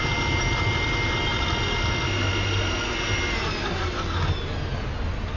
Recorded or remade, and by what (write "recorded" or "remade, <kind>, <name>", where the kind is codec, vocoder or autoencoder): recorded